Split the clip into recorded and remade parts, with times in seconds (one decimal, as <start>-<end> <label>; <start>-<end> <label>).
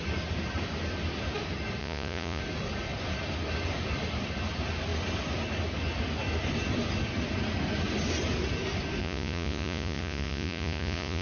0.0-1.8 recorded; 1.8-2.4 remade; 2.4-9.0 recorded; 9.0-11.2 remade